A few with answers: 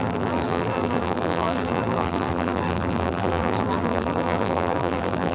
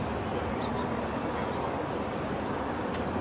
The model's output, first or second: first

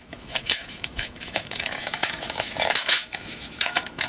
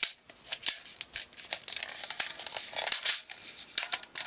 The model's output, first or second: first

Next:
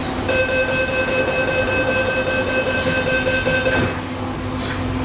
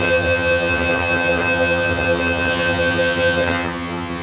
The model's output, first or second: second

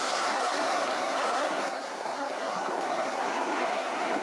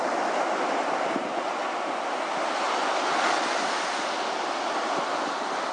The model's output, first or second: first